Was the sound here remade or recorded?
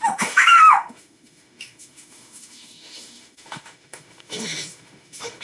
remade